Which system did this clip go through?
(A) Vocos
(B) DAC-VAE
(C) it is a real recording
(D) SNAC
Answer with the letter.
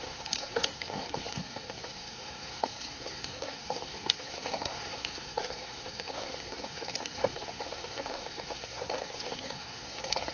D